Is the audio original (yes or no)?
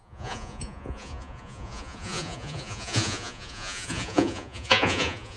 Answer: no